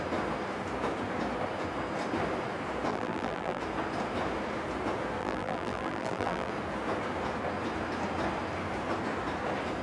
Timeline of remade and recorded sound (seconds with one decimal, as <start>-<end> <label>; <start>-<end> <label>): 0.0-2.9 recorded; 2.9-3.6 remade; 3.6-5.2 recorded; 5.2-6.5 remade; 6.5-9.8 recorded